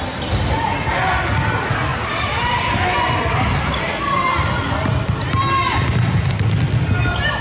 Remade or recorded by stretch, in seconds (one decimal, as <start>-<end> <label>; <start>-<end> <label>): 0.0-7.4 recorded